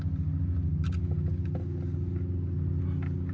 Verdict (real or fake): real